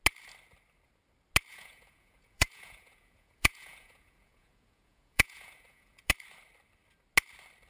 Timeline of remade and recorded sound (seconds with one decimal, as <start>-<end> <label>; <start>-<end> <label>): 0.0-1.5 recorded; 1.5-6.1 remade; 6.1-7.7 recorded